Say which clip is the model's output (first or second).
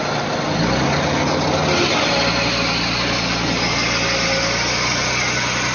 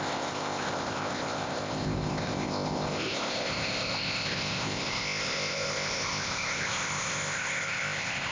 second